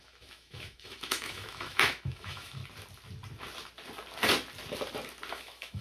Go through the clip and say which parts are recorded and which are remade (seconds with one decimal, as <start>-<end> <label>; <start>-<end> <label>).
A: 0.0-2.6 remade; 2.6-5.3 recorded; 5.3-5.8 remade